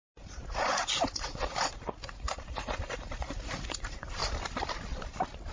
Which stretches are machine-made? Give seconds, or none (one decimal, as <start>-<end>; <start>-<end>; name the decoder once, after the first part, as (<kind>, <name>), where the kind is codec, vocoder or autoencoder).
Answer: 0.0-4.2 (vocoder, Vocos)